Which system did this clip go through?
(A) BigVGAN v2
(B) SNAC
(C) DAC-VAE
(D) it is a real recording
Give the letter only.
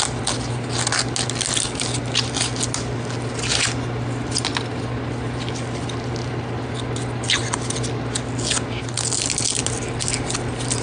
D